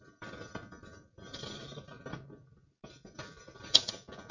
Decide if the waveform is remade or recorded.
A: remade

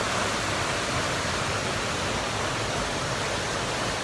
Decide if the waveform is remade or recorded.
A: recorded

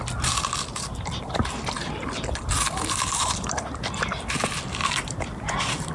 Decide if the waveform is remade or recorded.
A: remade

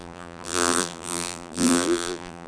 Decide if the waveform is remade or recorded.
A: remade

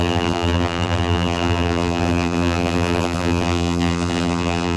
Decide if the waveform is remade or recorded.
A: remade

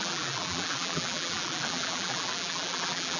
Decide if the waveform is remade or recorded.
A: remade